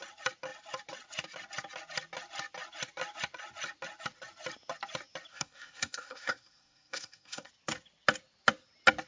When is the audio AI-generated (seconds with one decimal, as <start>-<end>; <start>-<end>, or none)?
5.3-7.5